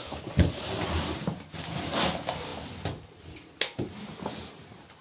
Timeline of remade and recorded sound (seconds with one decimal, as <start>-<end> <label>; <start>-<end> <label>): 0.0-5.0 recorded